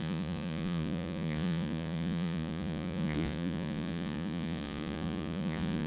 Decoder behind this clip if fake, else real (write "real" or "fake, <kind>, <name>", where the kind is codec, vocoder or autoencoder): fake, vocoder, Vocos